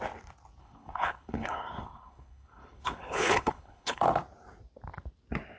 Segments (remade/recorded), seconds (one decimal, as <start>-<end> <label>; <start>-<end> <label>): 0.0-0.6 recorded; 0.6-4.0 remade; 4.0-5.6 recorded